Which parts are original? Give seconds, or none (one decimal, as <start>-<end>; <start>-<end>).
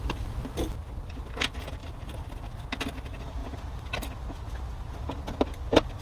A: 0.0-1.8; 2.7-6.0